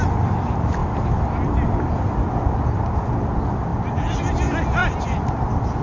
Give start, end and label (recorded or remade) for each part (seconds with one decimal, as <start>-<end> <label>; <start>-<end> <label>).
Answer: 0.0-0.8 recorded; 0.8-3.1 remade; 3.1-3.7 recorded; 3.7-4.2 remade; 4.2-4.8 recorded; 4.8-5.8 remade